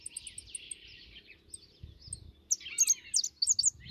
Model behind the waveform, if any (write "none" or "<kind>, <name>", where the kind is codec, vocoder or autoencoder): none